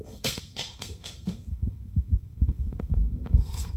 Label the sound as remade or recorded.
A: remade